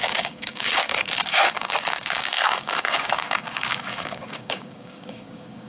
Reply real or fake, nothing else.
fake